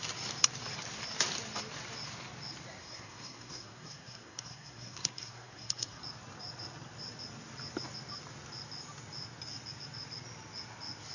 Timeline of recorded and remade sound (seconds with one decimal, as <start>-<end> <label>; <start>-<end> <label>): 0.0-2.8 recorded; 2.8-6.0 remade; 6.0-11.1 recorded